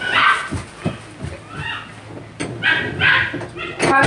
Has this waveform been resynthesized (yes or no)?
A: no